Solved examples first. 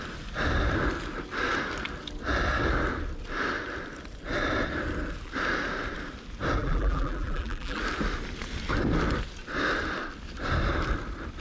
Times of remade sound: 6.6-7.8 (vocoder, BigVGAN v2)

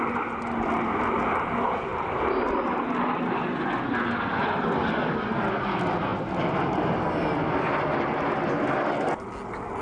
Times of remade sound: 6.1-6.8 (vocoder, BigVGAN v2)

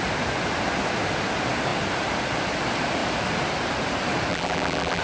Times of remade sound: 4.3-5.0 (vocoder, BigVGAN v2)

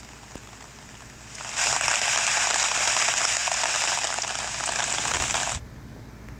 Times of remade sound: none

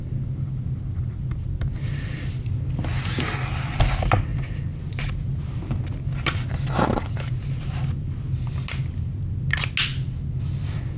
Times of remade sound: none

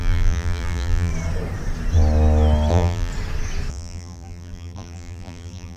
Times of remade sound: 0.0-1.1 (vocoder, BigVGAN v2); 2.7-3.1; 3.7-5.8